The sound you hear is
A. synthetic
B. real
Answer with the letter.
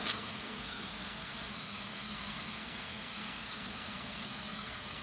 A